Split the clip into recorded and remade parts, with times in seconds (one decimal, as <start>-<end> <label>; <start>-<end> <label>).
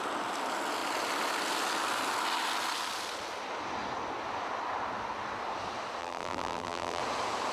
0.0-6.0 recorded; 6.0-7.0 remade; 7.0-7.5 recorded